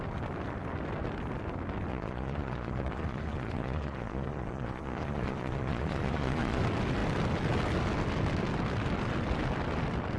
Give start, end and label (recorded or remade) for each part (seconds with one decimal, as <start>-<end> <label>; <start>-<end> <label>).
0.0-1.9 recorded; 1.9-6.6 remade; 6.6-10.2 recorded